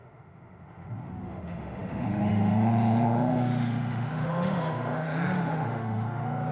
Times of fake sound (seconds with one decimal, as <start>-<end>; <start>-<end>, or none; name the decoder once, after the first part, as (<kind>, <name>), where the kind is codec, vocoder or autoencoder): 0.0-6.5 (autoencoder, DAC-VAE)